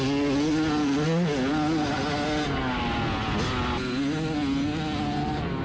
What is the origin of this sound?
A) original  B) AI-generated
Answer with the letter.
A